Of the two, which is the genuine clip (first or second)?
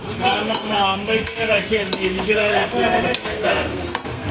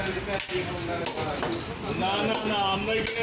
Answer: second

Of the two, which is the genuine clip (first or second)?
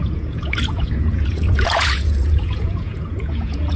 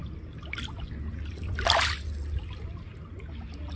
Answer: second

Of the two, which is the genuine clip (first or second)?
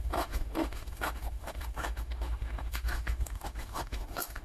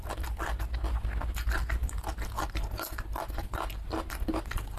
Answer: second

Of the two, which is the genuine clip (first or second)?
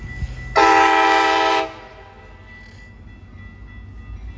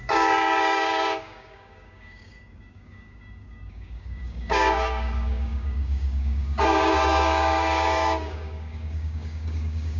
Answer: first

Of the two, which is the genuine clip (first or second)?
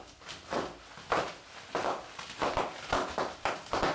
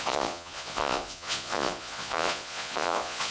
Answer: first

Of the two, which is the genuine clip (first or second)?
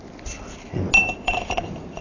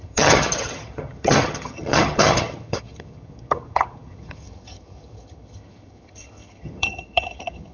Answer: first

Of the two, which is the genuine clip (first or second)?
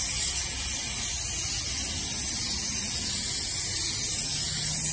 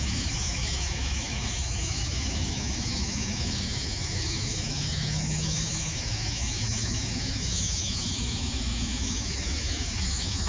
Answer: first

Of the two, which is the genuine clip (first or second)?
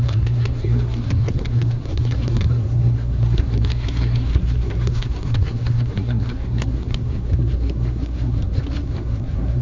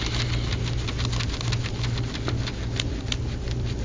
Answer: second